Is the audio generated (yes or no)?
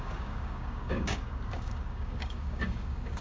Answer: yes